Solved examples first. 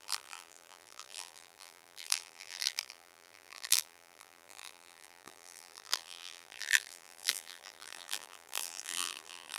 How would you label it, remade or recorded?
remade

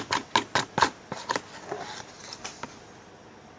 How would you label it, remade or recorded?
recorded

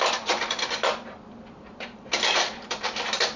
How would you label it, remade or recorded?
recorded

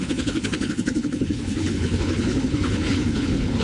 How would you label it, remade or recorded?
remade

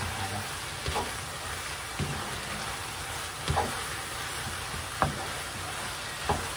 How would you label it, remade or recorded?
recorded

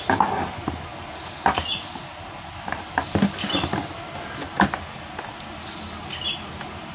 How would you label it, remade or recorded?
recorded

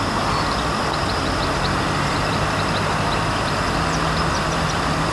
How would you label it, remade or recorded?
recorded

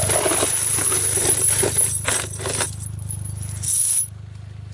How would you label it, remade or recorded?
recorded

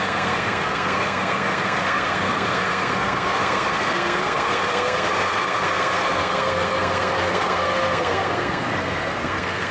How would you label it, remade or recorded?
remade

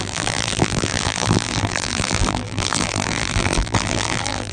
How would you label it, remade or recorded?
remade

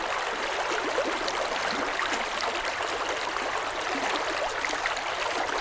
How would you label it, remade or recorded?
recorded